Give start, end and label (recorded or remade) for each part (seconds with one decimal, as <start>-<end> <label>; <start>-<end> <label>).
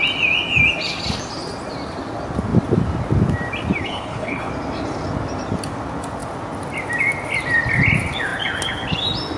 0.0-3.8 recorded; 3.8-4.5 remade; 4.5-9.4 recorded